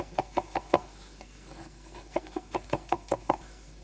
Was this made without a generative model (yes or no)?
no